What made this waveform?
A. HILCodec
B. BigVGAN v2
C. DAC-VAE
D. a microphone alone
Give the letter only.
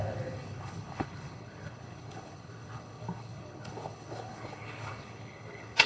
A